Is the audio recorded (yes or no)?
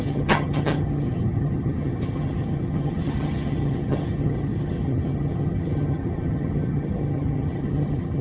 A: no